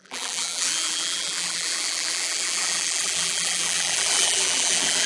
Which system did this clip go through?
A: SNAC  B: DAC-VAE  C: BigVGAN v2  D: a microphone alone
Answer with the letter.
C